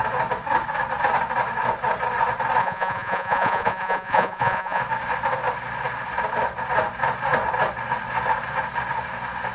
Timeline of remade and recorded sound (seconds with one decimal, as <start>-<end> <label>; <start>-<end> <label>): 0.0-2.6 recorded; 2.6-4.8 remade; 4.8-9.5 recorded